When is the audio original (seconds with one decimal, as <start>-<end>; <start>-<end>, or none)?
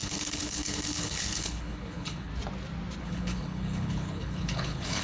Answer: 2.3-3.0